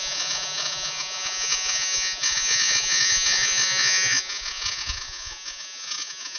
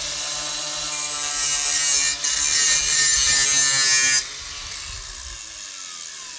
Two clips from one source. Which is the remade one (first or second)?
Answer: first